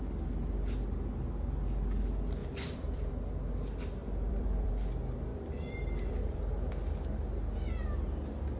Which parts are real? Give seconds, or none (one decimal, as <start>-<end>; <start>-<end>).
0.0-2.4; 3.1-4.0; 4.7-5.3; 6.7-8.6